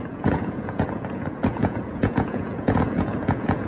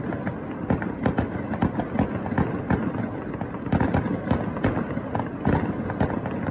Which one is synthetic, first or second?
first